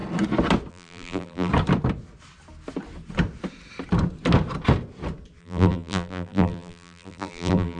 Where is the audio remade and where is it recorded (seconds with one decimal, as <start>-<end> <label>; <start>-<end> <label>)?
0.0-0.7 recorded; 0.7-1.5 remade; 1.5-5.4 recorded; 5.4-7.8 remade